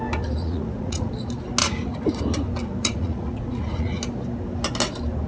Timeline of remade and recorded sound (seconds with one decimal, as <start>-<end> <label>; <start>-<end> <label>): 0.0-0.4 recorded; 0.4-1.1 remade; 1.1-1.6 recorded; 1.6-2.2 remade; 2.2-2.8 recorded; 2.8-4.0 remade; 4.0-5.3 recorded